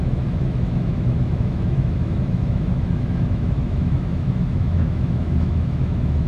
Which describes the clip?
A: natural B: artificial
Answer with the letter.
B